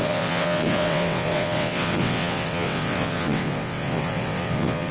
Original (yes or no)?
no